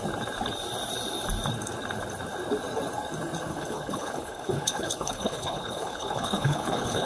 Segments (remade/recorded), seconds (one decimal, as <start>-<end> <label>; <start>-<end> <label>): 0.0-3.5 recorded; 3.5-7.1 remade